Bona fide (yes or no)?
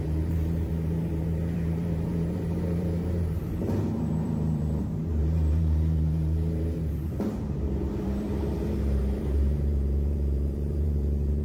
no